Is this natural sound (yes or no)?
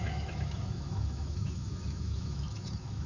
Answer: no